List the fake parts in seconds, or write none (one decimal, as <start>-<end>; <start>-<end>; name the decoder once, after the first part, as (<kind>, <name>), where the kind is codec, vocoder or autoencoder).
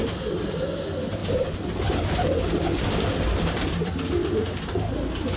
1.2-4.4 (vocoder, BigVGAN v2)